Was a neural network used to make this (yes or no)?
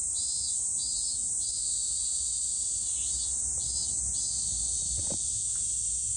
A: no